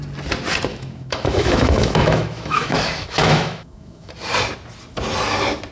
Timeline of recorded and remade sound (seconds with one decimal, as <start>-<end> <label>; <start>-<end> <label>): 0.0-0.7 recorded; 0.7-4.1 remade; 4.1-5.7 recorded